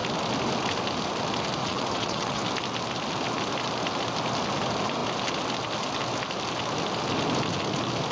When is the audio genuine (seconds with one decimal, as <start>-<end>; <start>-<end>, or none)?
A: 0.0-1.6; 2.4-8.1